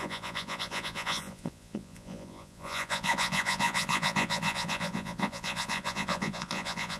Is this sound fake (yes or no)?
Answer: yes